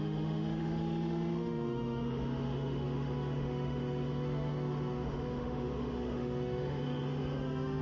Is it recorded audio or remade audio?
remade